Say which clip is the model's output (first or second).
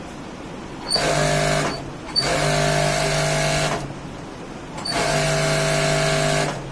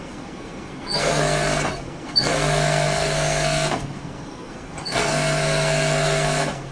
second